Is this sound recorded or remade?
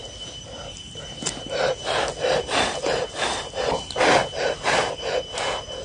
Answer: recorded